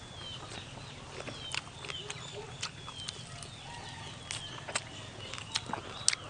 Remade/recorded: recorded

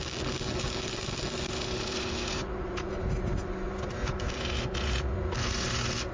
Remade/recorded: recorded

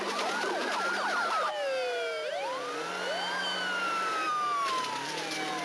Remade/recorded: recorded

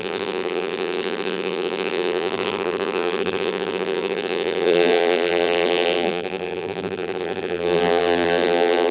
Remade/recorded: remade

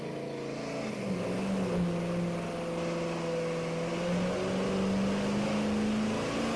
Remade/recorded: recorded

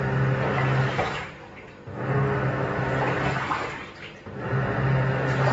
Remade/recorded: recorded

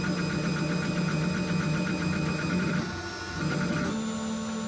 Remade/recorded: recorded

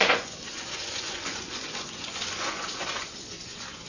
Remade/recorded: remade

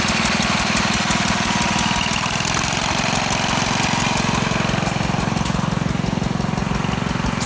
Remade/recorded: recorded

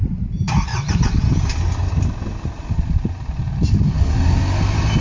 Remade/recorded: recorded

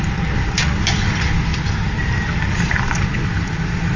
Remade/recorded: recorded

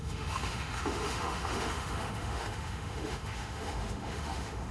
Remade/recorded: remade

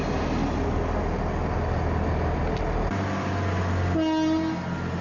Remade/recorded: recorded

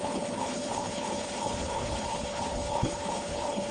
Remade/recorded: remade